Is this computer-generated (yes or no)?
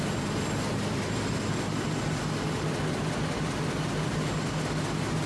no